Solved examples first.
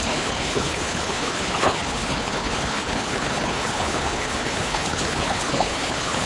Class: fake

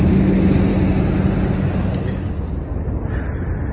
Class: real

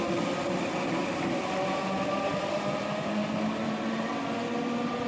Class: real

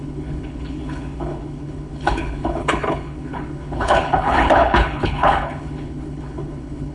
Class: fake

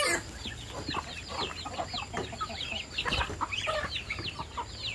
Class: real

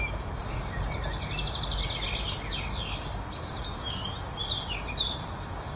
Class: real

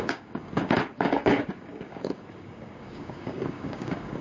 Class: fake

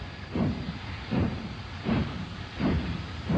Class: fake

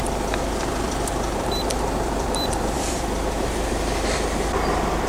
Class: fake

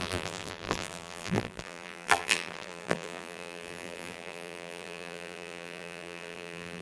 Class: fake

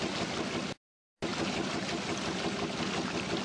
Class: real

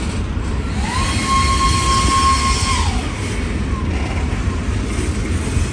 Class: real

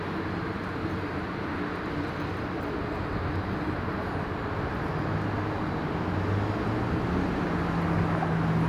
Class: real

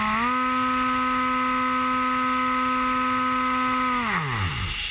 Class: real